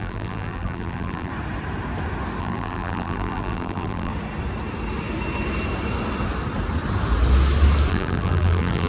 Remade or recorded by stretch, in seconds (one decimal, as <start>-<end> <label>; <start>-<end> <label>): 0.0-1.3 remade; 1.3-2.4 recorded; 2.4-4.1 remade; 4.1-7.9 recorded; 7.9-8.9 remade